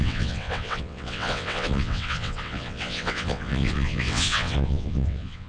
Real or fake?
fake